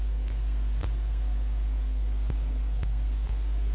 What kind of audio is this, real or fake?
fake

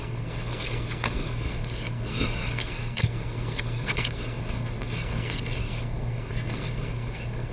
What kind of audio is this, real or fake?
fake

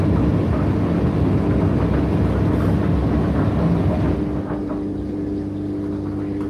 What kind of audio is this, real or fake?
real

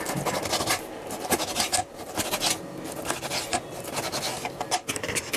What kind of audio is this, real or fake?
real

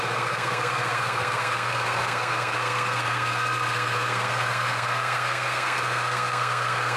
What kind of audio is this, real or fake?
fake